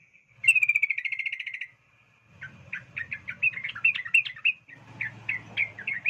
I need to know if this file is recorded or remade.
recorded